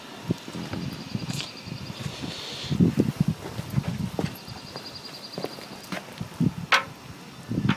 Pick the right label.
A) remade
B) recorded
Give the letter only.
B